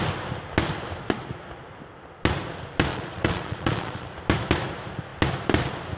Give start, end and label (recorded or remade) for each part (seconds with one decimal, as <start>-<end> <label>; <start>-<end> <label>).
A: 0.0-2.9 recorded; 2.9-4.1 remade; 4.1-6.0 recorded

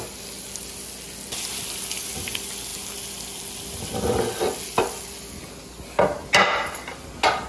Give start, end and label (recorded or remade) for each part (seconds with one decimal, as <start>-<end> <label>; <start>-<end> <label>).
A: 0.0-7.5 recorded